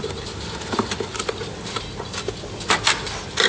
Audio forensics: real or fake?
real